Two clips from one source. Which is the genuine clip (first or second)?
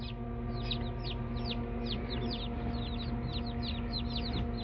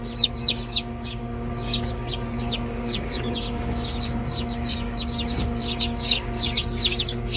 first